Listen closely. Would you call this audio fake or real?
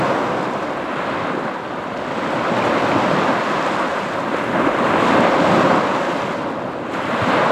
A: real